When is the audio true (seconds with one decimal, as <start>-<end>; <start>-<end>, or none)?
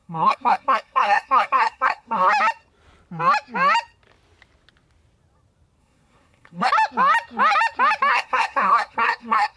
2.3-5.8; 6.7-8.1